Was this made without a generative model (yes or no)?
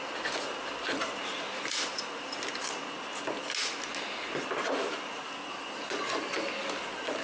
yes